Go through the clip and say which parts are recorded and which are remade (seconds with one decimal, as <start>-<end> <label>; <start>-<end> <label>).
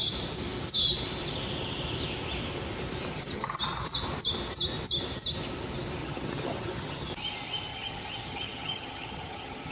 0.0-3.1 recorded; 3.1-3.6 remade; 3.6-6.0 recorded; 6.0-7.1 remade; 7.1-7.7 recorded; 7.7-9.7 remade